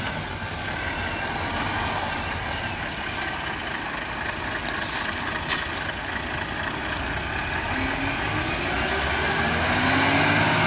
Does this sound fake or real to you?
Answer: real